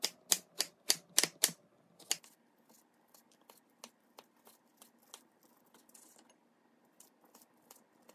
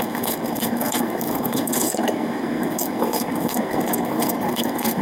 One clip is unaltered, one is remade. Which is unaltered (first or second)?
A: first